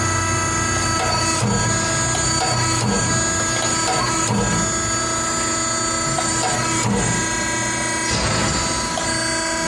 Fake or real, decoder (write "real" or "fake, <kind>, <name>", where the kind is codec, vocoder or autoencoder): real